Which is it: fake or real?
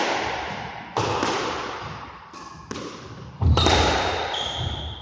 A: real